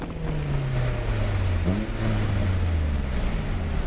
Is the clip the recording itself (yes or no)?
yes